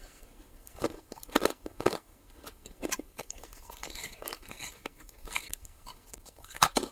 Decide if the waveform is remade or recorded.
remade